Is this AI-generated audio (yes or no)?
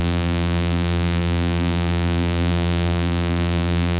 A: yes